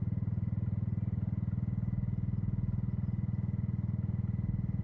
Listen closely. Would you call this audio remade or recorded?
recorded